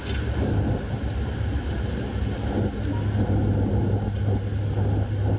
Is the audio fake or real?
real